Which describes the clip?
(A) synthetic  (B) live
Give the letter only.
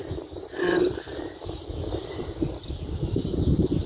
A